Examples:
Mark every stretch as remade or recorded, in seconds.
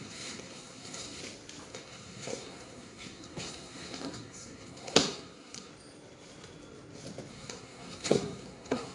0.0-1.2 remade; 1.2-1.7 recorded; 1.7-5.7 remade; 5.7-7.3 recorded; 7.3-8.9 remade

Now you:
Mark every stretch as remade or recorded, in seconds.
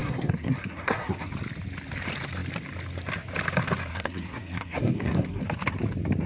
0.0-1.3 remade; 1.3-3.9 recorded; 3.9-5.4 remade; 5.4-6.3 recorded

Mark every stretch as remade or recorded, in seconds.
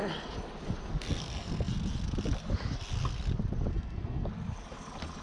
0.0-0.8 recorded; 0.8-1.7 remade; 1.7-3.7 recorded; 3.7-4.3 remade; 4.3-5.2 recorded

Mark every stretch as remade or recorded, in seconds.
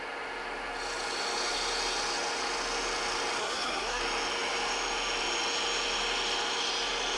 0.0-3.4 recorded; 3.4-4.0 remade; 4.0-7.2 recorded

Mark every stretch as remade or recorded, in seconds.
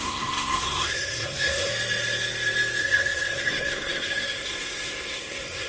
0.0-1.7 remade; 1.7-2.8 recorded; 2.8-5.7 remade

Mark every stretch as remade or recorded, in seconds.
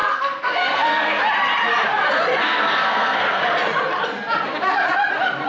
0.0-1.2 remade; 1.2-2.4 recorded; 2.4-3.4 remade; 3.4-5.5 recorded